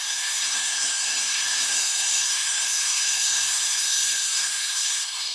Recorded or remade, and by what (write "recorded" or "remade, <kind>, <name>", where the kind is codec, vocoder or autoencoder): remade, codec, SNAC